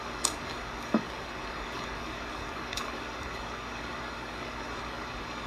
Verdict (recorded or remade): remade